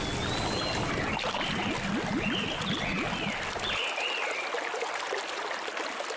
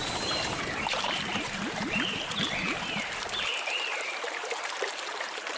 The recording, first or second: first